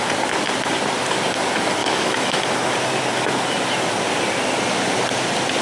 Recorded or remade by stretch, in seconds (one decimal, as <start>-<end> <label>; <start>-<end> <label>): 0.0-1.8 recorded; 1.8-2.4 remade; 2.4-5.6 recorded